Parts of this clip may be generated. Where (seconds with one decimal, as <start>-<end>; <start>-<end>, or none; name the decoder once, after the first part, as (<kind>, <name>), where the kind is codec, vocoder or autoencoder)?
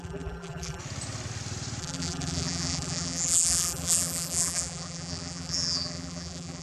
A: 0.0-0.8 (vocoder, BigVGAN v2); 1.8-6.6